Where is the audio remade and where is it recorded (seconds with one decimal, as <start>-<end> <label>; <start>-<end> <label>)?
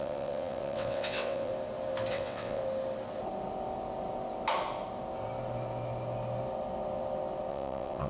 0.0-1.5 remade; 1.5-2.1 recorded; 2.1-2.6 remade; 2.6-7.5 recorded; 7.5-8.1 remade